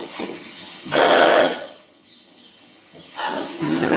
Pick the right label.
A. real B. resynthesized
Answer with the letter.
B